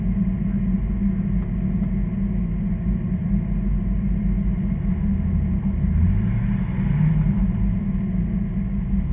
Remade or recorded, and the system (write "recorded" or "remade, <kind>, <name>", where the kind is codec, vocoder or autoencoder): recorded